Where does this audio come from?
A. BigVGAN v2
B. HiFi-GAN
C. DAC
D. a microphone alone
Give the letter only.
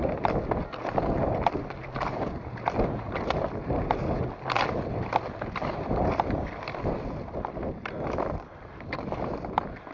D